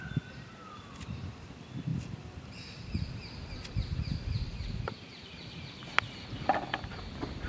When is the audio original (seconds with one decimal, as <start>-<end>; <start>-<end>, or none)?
0.0-7.5